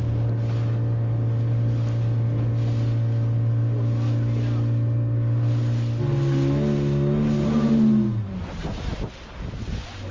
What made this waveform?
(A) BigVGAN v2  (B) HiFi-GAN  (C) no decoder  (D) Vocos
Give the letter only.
C